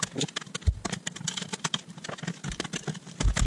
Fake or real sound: real